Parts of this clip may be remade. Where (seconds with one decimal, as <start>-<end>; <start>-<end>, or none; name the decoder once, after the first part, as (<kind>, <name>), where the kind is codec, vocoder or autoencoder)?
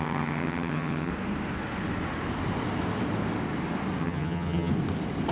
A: 0.0-1.1 (vocoder, HiFi-GAN); 4.0-4.7